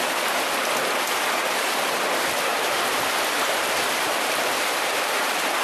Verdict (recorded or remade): remade